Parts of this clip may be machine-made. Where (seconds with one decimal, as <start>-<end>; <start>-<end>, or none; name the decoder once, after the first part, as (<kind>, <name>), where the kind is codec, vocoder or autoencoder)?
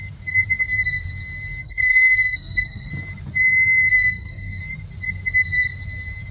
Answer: 1.6-2.9 (codec, SNAC); 3.9-4.6